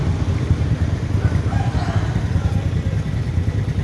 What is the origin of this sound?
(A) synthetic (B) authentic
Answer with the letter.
B